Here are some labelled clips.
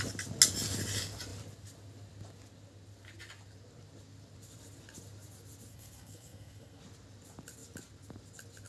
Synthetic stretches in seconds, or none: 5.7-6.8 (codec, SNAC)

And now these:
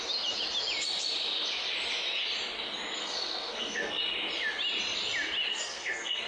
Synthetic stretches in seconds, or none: 3.0-4.0 (codec, SNAC); 5.5-6.3

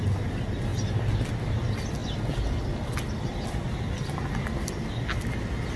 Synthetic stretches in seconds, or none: none

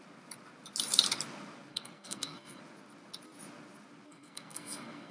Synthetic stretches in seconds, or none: 1.7-2.6 (codec, SNAC); 4.1-5.1

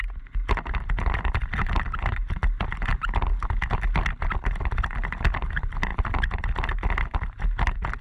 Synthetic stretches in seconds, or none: none

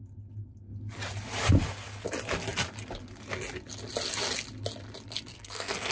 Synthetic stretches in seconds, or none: 5.3-5.9 (codec, SNAC)